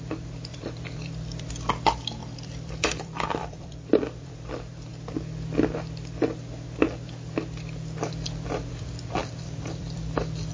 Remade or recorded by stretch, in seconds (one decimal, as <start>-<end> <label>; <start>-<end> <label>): 0.0-0.5 recorded; 0.5-1.5 remade; 1.5-2.2 recorded; 2.2-4.5 remade; 4.5-9.2 recorded; 9.2-10.0 remade; 10.0-10.5 recorded